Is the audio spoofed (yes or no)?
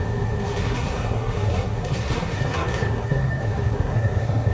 yes